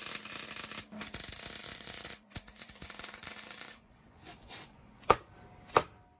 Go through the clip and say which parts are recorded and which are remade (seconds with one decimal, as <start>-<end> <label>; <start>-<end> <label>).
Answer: 0.0-1.6 recorded; 1.6-5.3 remade; 5.3-6.2 recorded